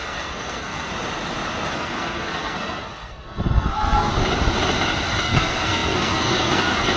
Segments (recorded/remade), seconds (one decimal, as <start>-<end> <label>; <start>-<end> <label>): 0.0-0.9 remade; 0.9-1.7 recorded; 1.7-4.1 remade; 4.1-5.2 recorded; 5.2-7.0 remade

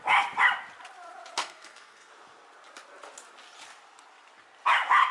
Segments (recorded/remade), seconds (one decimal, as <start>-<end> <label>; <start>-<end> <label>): 0.0-1.4 recorded; 1.4-2.1 remade; 2.1-5.1 recorded

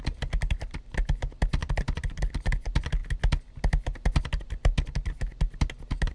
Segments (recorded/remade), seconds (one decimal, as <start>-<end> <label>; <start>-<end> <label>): 0.0-6.1 recorded

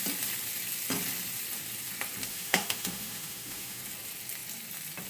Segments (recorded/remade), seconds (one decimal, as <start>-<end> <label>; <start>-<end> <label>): 0.0-2.3 recorded; 2.3-3.8 remade; 3.8-5.1 recorded

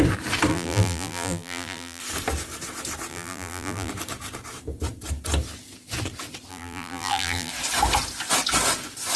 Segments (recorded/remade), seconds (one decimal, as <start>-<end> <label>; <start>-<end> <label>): 0.0-0.5 recorded; 0.5-2.0 remade; 2.0-3.1 recorded; 3.1-3.9 remade; 3.9-6.5 recorded; 6.5-7.5 remade; 7.5-9.2 recorded